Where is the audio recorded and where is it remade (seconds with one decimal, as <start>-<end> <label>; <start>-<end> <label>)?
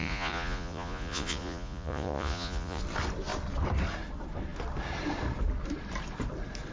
0.0-2.8 remade; 2.8-6.7 recorded